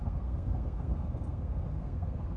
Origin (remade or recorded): remade